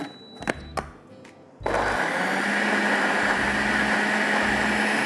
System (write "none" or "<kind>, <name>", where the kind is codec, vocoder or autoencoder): none